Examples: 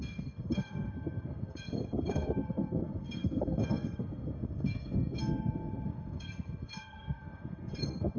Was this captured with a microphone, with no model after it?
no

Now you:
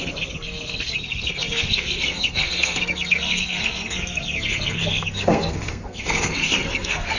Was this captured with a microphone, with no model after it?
no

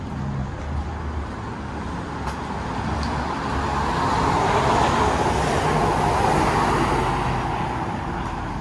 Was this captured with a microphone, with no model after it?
yes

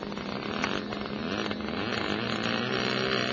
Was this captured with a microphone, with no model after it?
yes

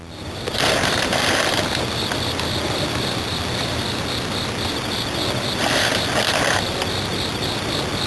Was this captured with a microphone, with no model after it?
yes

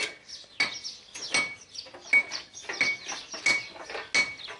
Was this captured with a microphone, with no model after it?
yes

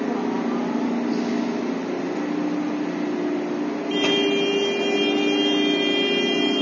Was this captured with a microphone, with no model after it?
yes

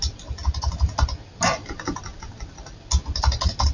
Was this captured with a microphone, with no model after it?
yes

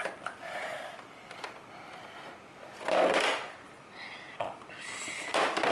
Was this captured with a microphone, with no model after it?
yes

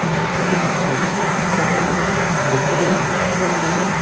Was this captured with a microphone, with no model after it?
no